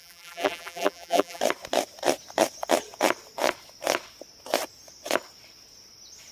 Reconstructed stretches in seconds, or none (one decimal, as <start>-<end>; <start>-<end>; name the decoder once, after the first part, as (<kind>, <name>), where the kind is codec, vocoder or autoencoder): 0.0-1.4 (vocoder, BigVGAN v2)

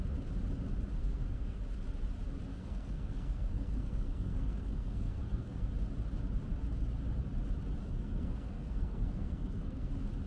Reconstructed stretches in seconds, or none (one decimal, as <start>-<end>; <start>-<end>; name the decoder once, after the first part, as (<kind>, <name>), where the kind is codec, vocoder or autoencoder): 1.0-1.6 (codec, SNAC); 2.5-5.7; 7.8-9.9

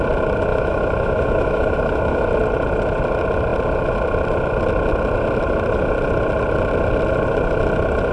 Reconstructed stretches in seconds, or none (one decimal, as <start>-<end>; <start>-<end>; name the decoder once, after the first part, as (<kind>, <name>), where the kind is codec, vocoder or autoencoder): 0.5-2.2 (autoencoder, DAC-VAE)

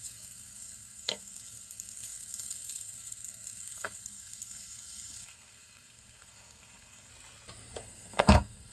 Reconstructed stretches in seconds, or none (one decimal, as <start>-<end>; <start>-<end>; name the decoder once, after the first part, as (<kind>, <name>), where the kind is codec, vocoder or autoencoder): 0.0-7.1 (codec, SNAC); 7.8-8.7

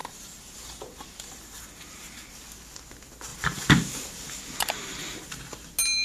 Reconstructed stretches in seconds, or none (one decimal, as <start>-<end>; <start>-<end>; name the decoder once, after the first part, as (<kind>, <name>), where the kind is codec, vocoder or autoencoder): 0.0-2.3 (vocoder, BigVGAN v2); 3.3-5.4

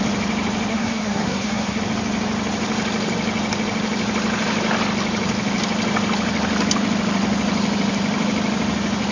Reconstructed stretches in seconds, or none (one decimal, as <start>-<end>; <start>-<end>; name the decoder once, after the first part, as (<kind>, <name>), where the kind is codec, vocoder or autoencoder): 0.7-1.8 (codec, SNAC)

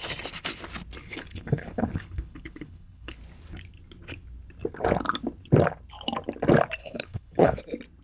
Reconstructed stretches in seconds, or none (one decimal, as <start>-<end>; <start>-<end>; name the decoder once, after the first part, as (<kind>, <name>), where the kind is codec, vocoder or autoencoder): 1.0-3.2 (codec, HILCodec); 6.8-7.6

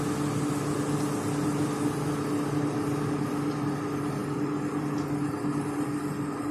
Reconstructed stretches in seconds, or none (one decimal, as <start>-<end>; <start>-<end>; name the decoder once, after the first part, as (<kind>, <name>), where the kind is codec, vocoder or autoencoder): none